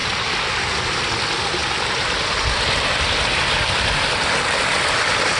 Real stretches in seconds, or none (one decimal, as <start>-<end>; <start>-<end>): 0.0-5.4